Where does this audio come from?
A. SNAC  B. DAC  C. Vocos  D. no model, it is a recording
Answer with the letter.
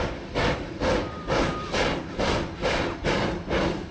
D